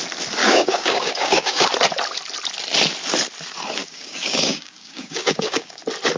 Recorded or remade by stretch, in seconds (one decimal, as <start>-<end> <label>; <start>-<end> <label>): 0.0-0.4 recorded; 0.4-1.7 remade; 1.7-3.8 recorded; 3.8-5.8 remade; 5.8-6.2 recorded